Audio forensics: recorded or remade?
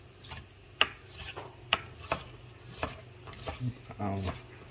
recorded